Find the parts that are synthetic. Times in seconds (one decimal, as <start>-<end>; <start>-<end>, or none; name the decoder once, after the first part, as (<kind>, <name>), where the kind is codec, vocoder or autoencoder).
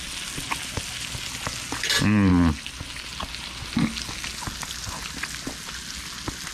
none